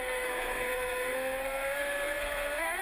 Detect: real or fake fake